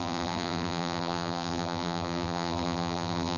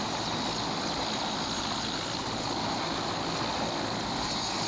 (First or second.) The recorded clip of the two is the second